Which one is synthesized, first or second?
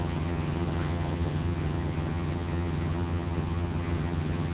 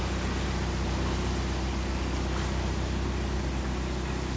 first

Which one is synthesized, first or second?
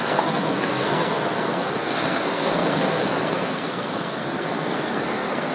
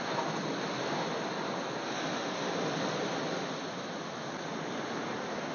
first